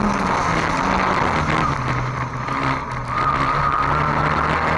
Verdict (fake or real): real